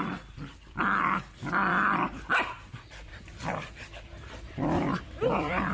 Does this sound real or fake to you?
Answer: fake